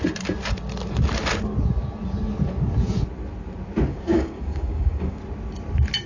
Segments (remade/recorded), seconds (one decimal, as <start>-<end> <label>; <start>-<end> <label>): 0.0-3.9 recorded; 3.9-5.2 remade; 5.2-6.1 recorded

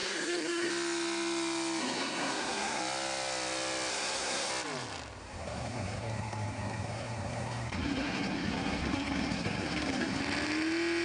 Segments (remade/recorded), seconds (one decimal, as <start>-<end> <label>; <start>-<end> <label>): 0.0-0.7 remade; 0.7-1.8 recorded; 1.8-2.8 remade; 2.8-3.9 recorded; 3.9-4.5 remade; 4.5-5.2 recorded; 5.2-10.2 remade; 10.2-11.0 recorded